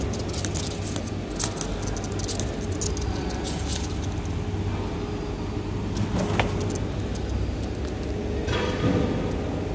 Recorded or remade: recorded